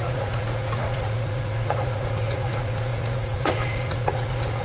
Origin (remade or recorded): remade